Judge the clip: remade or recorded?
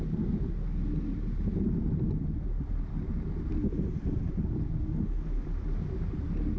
recorded